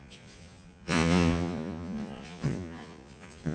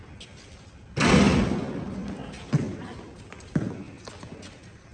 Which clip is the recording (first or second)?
second